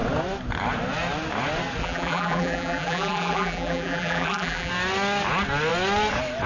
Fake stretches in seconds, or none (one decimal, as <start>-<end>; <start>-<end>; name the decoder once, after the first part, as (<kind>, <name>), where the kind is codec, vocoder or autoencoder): 1.8-4.7 (vocoder, BigVGAN v2)